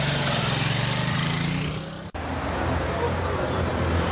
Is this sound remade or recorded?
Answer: recorded